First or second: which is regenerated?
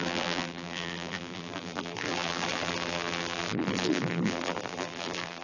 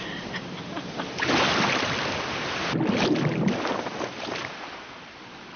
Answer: first